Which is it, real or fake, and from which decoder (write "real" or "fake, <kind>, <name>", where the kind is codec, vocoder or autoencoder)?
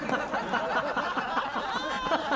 real